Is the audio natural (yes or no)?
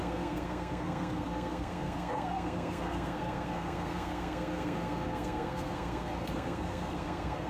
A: no